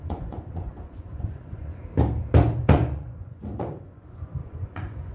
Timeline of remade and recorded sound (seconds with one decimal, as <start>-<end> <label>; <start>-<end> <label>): 0.0-1.8 remade; 1.8-2.6 recorded; 2.6-5.1 remade